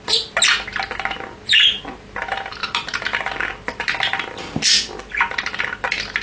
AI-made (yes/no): no